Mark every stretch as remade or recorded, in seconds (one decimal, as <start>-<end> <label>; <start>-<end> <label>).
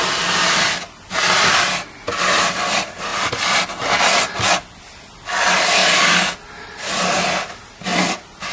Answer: 0.0-8.5 recorded